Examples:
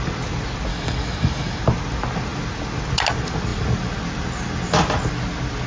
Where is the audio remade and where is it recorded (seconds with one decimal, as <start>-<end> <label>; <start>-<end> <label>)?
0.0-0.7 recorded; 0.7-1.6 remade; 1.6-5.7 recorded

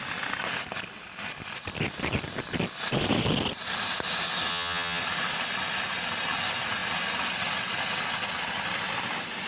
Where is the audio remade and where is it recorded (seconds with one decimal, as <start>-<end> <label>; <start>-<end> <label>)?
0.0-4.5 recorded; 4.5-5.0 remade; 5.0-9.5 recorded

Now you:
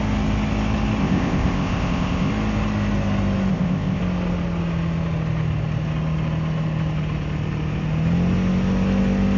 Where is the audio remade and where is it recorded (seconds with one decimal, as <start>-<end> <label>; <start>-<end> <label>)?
0.0-1.0 recorded; 1.0-2.3 remade; 2.3-3.5 recorded; 3.5-4.0 remade; 4.0-9.4 recorded

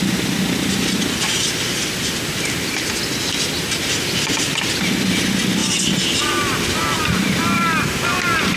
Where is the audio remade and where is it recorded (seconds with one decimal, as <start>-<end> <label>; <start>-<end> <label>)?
0.0-8.6 recorded

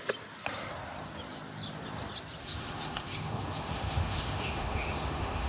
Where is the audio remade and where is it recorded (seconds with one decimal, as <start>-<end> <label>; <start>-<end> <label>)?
0.0-2.4 recorded; 2.4-5.5 remade

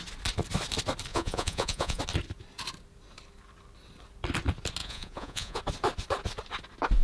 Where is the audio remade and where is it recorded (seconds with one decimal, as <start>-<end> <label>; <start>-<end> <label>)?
0.0-1.1 recorded; 1.1-2.0 remade; 2.0-4.8 recorded; 4.8-5.6 remade; 5.6-7.0 recorded

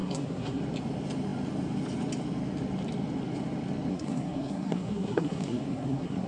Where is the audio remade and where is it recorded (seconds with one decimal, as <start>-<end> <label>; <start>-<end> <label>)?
0.0-0.6 remade; 0.6-3.9 recorded; 3.9-6.3 remade

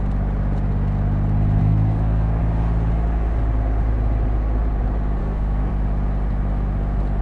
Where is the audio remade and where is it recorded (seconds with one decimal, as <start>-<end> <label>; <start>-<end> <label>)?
0.0-1.6 recorded; 1.6-2.4 remade; 2.4-5.2 recorded; 5.2-5.7 remade; 5.7-7.2 recorded